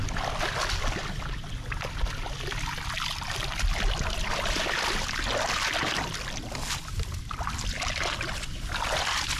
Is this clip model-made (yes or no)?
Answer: no